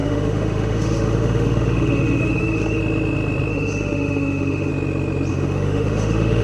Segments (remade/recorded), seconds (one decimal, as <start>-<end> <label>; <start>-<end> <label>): 0.0-2.8 remade; 2.8-3.5 recorded; 3.5-4.7 remade; 4.7-5.3 recorded; 5.3-6.4 remade

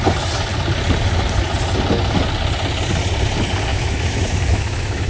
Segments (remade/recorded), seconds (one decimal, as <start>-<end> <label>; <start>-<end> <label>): 0.0-3.7 recorded; 3.7-5.1 remade

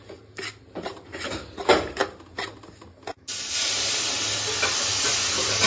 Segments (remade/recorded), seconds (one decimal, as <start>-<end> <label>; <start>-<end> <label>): 0.0-5.7 recorded

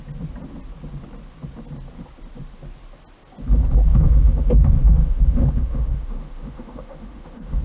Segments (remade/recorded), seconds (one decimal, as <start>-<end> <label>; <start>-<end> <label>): 0.0-3.9 recorded; 3.9-7.6 remade

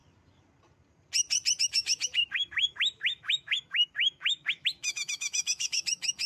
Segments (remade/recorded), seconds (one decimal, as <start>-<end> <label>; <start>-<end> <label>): 0.0-1.6 recorded; 1.6-6.3 remade

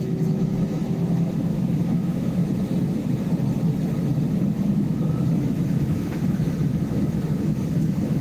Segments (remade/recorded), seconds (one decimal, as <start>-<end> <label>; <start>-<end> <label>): 0.0-2.4 remade; 2.4-4.3 recorded; 4.3-8.2 remade

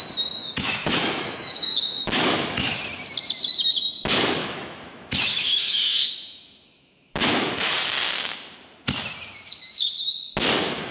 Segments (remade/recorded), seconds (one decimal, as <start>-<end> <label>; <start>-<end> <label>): 0.0-0.4 recorded; 0.4-2.8 remade; 2.8-4.4 recorded; 4.4-7.7 remade; 7.7-10.9 recorded